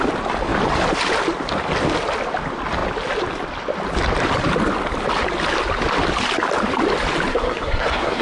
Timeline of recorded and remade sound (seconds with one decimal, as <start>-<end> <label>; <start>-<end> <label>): 0.0-7.3 recorded; 7.3-8.2 remade